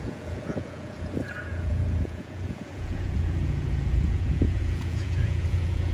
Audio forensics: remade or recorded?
remade